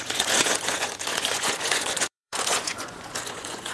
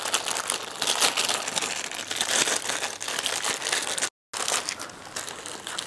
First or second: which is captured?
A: second